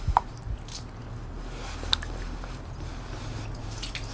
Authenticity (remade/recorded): recorded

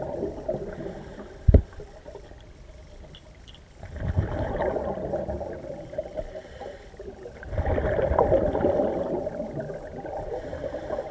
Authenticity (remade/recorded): remade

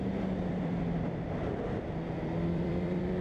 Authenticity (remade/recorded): remade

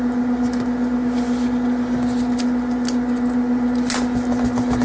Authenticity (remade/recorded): recorded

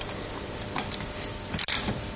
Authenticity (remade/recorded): recorded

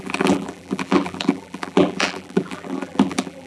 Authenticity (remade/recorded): remade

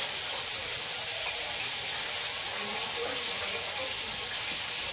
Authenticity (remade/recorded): recorded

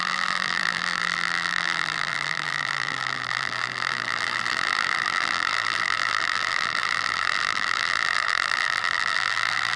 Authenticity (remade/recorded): remade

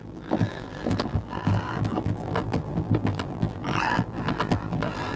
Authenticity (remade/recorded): remade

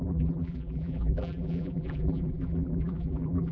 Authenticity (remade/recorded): remade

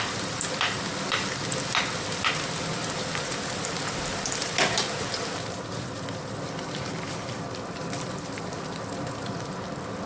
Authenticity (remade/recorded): remade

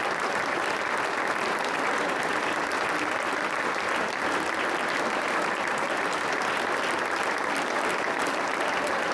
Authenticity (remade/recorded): remade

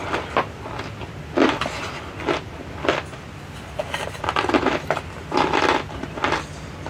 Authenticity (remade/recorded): recorded